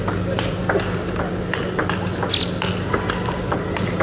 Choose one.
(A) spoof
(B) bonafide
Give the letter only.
B